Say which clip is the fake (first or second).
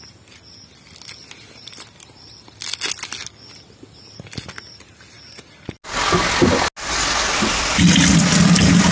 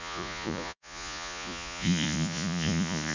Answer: second